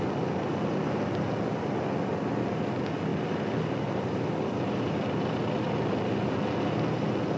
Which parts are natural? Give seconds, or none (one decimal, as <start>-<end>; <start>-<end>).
0.0-3.1; 5.2-7.4